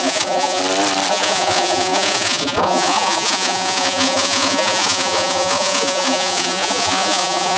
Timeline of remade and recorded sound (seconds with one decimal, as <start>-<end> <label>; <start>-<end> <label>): 0.0-0.6 remade; 0.6-1.1 recorded; 1.1-7.6 remade